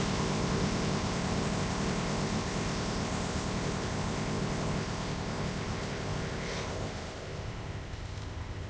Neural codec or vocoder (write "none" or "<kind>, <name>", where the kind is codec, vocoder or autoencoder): codec, ZipCodec